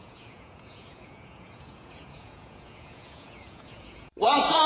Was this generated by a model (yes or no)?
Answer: yes